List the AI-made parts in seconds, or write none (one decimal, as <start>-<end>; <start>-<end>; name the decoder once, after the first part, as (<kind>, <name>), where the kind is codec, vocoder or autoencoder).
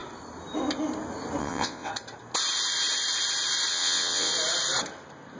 1.4-1.9 (vocoder, WaveNeXt); 3.7-4.3